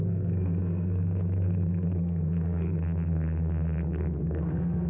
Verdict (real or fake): fake